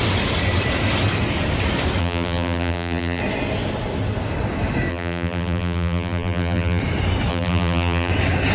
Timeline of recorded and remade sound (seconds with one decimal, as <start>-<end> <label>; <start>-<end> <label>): 0.0-2.0 recorded; 2.0-3.2 remade; 3.2-4.9 recorded; 4.9-6.8 remade; 6.8-7.3 recorded; 7.3-8.1 remade; 8.1-8.5 recorded